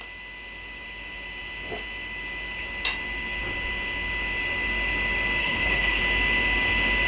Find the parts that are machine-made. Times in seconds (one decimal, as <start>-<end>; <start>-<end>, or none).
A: 5.4-6.0